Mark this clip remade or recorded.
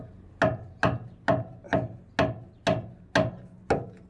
recorded